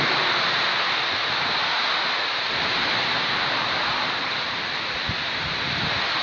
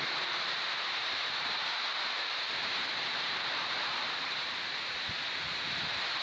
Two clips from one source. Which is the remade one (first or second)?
second